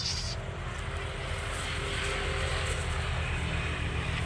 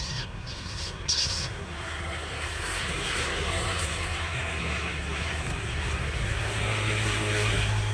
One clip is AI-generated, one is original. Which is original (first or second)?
first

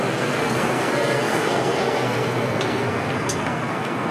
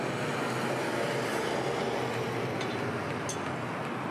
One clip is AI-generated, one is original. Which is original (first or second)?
second